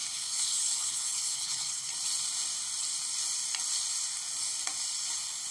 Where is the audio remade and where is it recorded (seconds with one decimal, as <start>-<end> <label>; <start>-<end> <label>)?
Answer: 0.0-1.9 remade; 1.9-5.5 recorded